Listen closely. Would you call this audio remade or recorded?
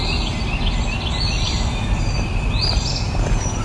remade